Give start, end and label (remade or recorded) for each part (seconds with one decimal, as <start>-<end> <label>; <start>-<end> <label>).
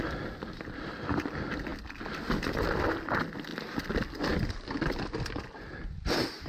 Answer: 0.0-6.5 recorded